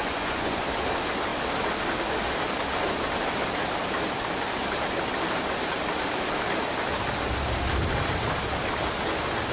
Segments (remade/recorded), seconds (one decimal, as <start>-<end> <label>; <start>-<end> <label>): 0.0-0.6 remade; 0.6-9.5 recorded